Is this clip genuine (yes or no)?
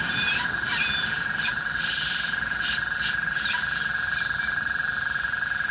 yes